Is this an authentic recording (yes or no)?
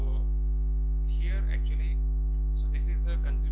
yes